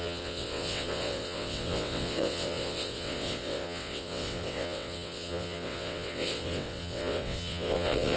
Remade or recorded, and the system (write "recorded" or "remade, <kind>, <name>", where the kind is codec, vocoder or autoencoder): remade, vocoder, WaveNeXt